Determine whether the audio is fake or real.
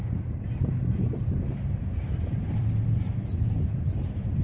fake